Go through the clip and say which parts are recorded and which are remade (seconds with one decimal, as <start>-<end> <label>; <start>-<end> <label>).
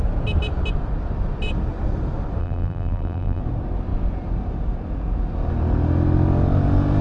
0.0-2.4 recorded; 2.4-3.4 remade; 3.4-7.0 recorded